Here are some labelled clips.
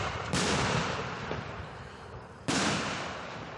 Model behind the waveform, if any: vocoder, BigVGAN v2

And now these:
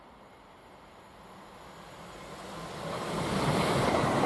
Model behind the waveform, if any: none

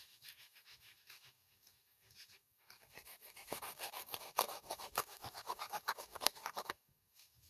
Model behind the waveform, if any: codec, DAC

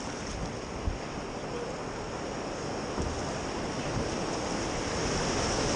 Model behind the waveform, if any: none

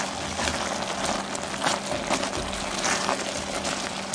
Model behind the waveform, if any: none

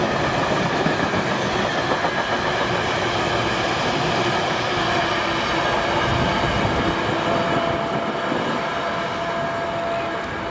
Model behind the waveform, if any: none